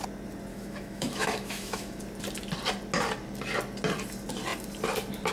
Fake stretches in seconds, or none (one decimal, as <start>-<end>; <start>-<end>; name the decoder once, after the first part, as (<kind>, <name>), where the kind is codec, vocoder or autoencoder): 0.5-2.0 (autoencoder, DAC-VAE)